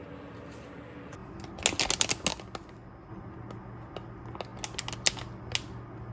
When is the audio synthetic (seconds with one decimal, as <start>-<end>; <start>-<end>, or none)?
none